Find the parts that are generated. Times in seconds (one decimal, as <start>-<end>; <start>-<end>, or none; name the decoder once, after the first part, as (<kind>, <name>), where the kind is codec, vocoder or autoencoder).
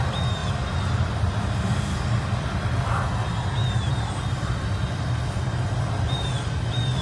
none